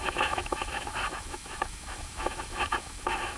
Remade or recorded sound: remade